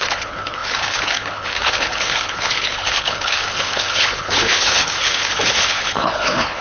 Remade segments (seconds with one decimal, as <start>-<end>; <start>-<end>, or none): 0.0-6.6

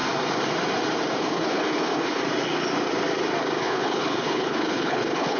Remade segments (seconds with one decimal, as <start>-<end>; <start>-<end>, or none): 1.2-2.2; 3.6-5.4

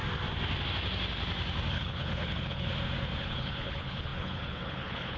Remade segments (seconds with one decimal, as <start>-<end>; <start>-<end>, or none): 1.7-2.7; 3.2-5.2

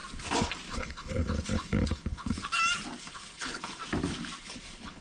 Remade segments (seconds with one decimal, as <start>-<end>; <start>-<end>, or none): 0.7-2.4; 3.0-3.8; 4.4-5.0